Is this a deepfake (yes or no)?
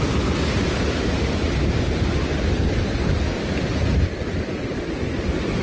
no